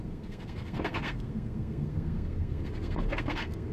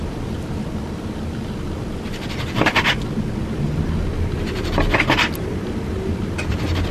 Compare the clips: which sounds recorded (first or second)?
second